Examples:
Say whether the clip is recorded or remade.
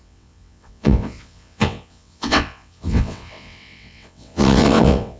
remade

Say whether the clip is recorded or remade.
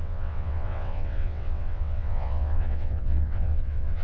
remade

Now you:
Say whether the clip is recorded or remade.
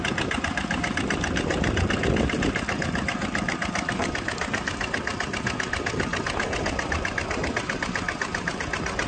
recorded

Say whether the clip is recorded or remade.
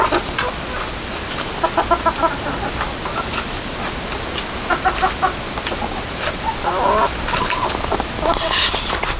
recorded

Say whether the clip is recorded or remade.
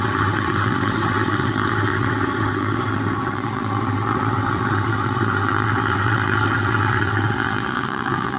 remade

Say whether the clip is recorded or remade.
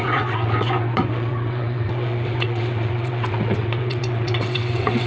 remade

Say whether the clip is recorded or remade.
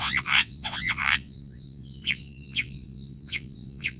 remade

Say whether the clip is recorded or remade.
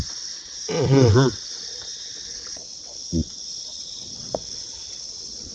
remade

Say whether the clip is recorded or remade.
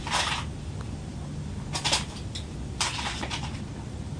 recorded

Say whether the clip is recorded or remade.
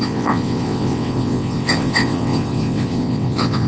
remade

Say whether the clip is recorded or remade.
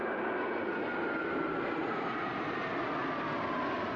recorded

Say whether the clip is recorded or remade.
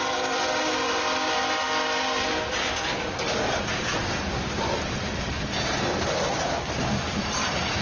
recorded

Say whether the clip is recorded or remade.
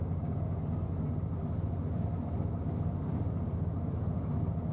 recorded